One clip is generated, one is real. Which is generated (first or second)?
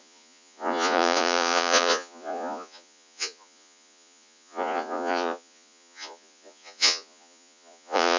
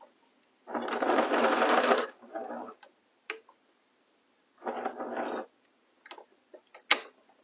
first